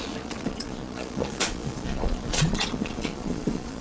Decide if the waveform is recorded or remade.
remade